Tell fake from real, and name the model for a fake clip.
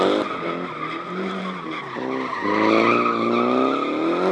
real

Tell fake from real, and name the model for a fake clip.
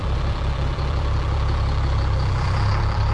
fake, vocoder, BigVGAN v2